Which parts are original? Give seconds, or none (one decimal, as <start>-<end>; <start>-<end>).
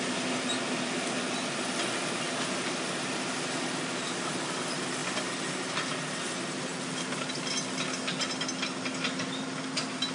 0.0-10.1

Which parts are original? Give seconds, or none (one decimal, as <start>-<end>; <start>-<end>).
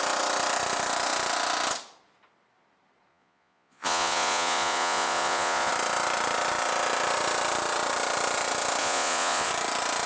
0.0-3.1; 5.7-8.8; 9.5-10.1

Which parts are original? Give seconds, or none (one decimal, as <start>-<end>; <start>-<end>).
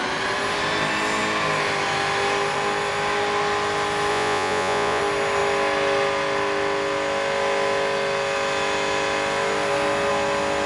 0.0-4.1; 5.0-10.7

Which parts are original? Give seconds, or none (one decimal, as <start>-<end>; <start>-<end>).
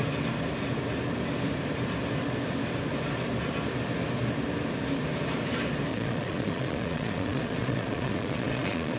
0.0-5.9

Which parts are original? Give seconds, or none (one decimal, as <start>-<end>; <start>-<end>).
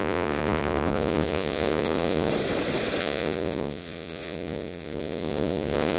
2.3-3.0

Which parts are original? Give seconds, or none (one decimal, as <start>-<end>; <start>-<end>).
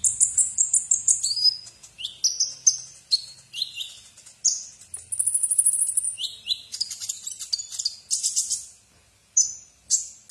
0.0-10.3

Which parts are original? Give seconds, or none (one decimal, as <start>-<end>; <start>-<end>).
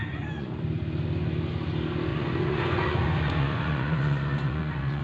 0.6-2.1